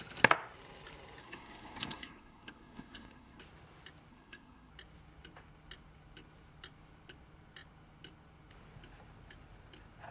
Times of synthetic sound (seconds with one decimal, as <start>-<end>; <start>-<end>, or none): 1.2-3.4; 4.1-4.7